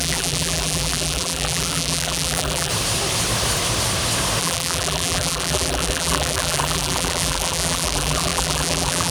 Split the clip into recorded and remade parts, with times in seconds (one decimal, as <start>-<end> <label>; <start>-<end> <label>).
0.0-2.7 remade; 2.7-4.4 recorded; 4.4-9.1 remade